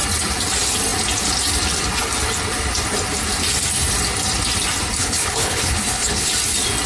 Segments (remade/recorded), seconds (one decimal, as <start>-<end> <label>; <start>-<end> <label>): 0.0-5.0 recorded; 5.0-6.3 remade; 6.3-6.9 recorded